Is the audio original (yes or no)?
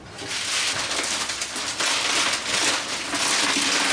yes